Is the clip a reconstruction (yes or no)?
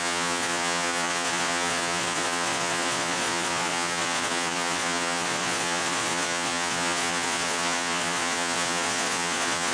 yes